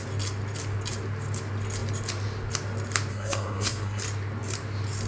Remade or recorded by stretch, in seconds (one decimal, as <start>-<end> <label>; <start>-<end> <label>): 0.0-3.1 recorded; 3.1-4.0 remade; 4.0-5.1 recorded